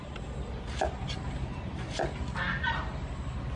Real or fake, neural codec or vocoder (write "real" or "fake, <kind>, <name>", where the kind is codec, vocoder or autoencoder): real